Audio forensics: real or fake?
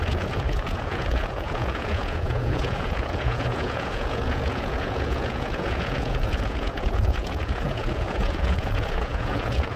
fake